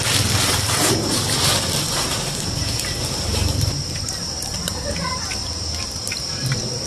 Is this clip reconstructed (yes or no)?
yes